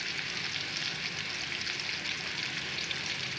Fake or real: real